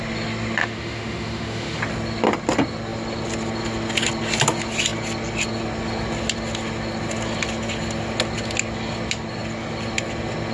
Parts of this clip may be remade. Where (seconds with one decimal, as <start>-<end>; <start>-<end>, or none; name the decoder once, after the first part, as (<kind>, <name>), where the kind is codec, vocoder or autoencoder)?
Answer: 0.6-1.8 (autoencoder, DAC-VAE)